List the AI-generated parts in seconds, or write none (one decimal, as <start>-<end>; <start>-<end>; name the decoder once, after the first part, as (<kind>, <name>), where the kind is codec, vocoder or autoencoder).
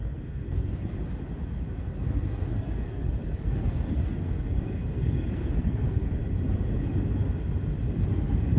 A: 0.0-0.9 (codec, SNAC); 1.7-6.2; 8.1-8.6